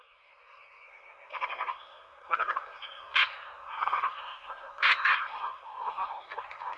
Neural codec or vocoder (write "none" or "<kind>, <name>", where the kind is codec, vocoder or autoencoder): codec, SNAC